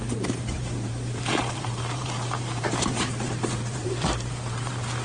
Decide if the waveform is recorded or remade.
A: remade